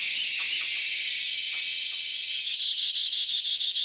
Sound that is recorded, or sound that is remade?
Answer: remade